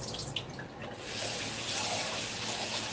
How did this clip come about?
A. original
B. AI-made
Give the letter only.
A